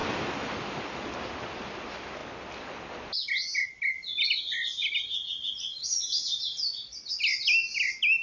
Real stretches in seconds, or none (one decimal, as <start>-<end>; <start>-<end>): 0.0-8.2